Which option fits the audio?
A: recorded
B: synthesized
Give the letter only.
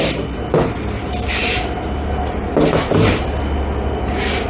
A